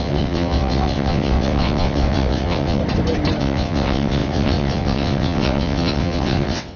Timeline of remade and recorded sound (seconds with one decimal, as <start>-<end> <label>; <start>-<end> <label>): 0.0-2.8 remade; 2.8-3.4 recorded; 3.4-6.8 remade